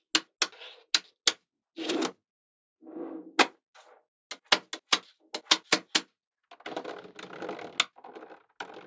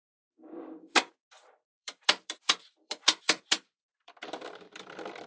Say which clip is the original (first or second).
first